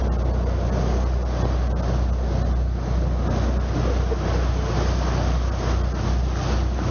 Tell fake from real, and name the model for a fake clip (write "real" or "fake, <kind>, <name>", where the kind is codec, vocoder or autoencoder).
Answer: real